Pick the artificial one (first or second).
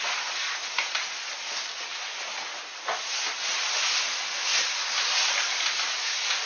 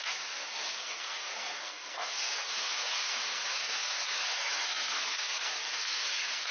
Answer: second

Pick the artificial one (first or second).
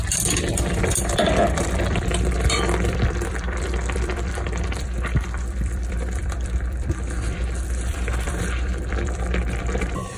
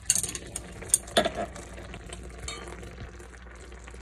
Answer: first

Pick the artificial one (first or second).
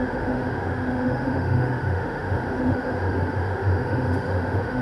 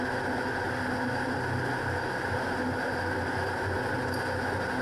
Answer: first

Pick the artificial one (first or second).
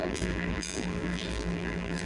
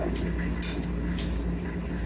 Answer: first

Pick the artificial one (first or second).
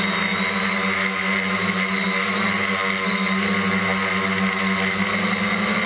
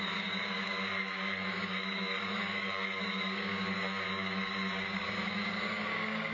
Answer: second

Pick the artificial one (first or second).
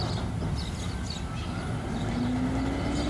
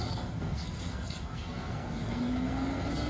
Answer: second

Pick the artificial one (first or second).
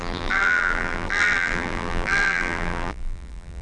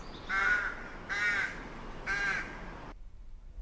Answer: first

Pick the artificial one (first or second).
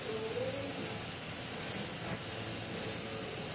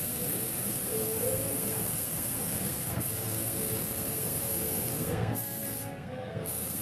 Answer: second